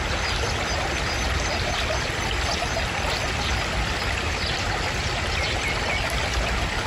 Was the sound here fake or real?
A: real